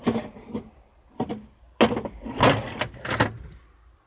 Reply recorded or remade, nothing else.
recorded